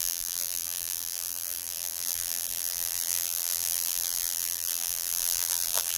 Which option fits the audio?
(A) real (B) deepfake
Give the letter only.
B